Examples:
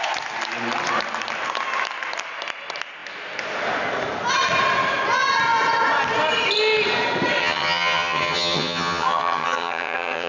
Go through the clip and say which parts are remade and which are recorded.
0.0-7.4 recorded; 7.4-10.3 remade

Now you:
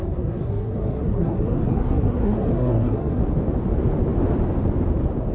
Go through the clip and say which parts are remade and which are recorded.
0.0-3.2 remade; 3.2-5.3 recorded

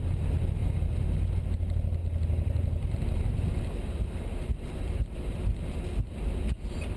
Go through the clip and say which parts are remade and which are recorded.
0.0-7.0 recorded

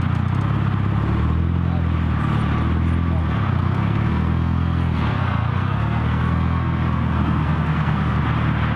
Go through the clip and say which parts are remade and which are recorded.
0.0-3.2 recorded; 3.2-8.2 remade; 8.2-8.8 recorded

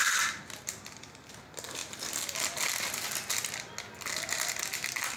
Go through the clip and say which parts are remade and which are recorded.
0.0-1.3 remade; 1.3-5.2 recorded

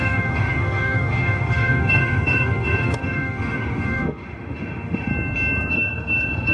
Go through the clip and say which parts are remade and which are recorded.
0.0-5.1 remade; 5.1-5.7 recorded; 5.7-6.5 remade

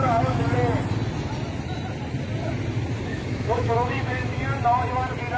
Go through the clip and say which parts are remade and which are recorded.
0.0-0.4 remade; 0.4-3.1 recorded; 3.1-4.4 remade; 4.4-5.4 recorded

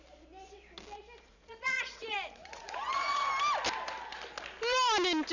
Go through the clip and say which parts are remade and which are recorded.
0.0-1.3 recorded; 1.3-3.3 remade; 3.3-5.3 recorded